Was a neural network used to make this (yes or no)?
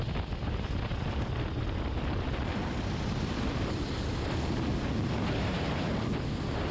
no